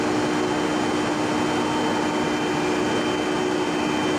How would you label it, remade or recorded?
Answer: recorded